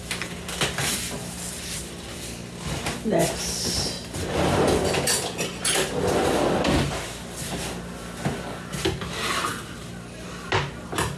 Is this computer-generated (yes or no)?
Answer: no